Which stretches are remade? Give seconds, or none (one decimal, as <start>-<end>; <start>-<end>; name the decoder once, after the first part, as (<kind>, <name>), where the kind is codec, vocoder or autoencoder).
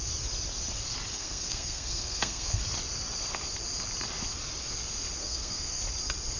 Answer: 1.1-2.6 (codec, SNAC); 5.2-5.8